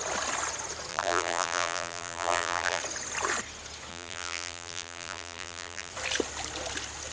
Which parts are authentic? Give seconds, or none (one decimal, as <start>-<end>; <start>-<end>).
0.0-0.9; 2.8-3.9; 5.9-7.1